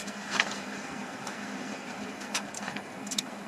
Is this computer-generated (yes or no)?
yes